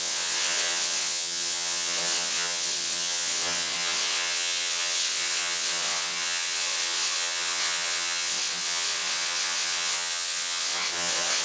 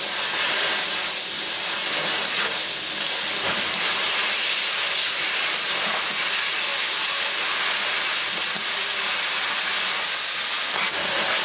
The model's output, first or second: first